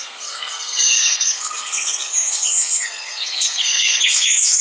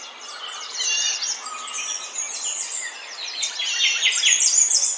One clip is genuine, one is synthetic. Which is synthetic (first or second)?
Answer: first